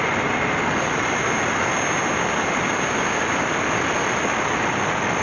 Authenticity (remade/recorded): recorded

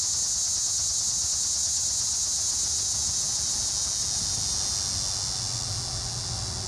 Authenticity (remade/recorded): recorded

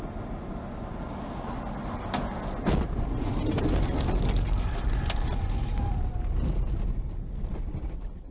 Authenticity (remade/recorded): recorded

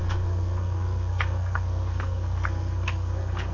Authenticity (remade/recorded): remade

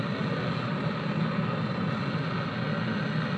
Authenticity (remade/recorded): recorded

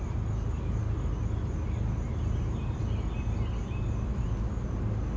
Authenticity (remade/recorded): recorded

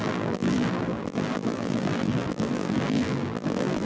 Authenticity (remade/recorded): remade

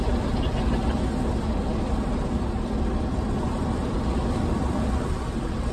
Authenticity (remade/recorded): recorded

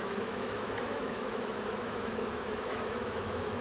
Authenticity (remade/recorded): remade